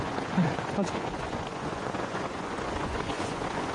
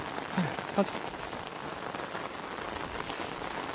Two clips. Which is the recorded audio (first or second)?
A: second